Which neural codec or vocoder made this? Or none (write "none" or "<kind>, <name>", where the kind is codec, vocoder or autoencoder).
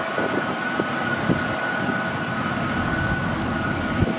none